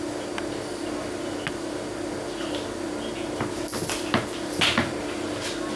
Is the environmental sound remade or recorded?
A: recorded